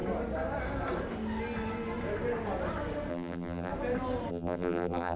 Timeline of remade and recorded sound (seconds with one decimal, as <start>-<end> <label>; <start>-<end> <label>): 0.0-3.1 recorded; 3.1-3.7 remade; 3.7-4.3 recorded; 4.3-5.2 remade